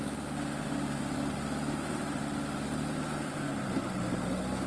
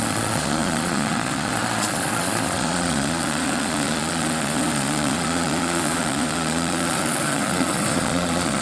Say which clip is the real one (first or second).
first